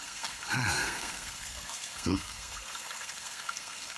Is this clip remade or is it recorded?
remade